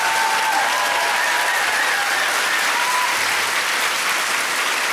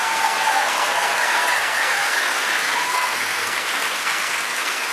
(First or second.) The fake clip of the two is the second